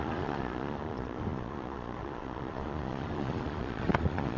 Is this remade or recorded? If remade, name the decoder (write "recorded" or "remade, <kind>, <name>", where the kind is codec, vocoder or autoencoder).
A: remade, vocoder, Vocos